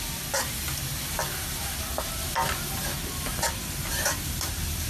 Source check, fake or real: real